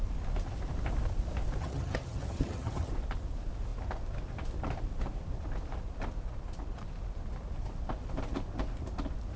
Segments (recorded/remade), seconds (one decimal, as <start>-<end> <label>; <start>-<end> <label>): 0.0-1.6 recorded; 1.6-2.9 remade; 2.9-9.4 recorded